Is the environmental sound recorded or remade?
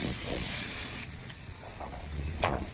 remade